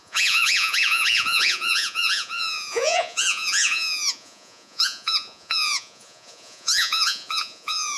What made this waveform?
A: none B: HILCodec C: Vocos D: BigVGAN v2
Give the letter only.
C